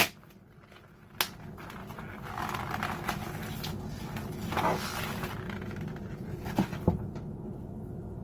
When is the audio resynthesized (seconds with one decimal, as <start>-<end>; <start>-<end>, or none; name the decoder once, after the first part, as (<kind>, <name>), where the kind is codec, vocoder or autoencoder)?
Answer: none